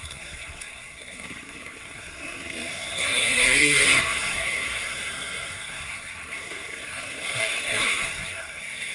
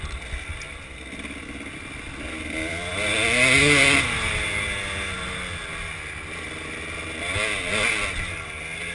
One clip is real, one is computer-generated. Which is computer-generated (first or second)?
first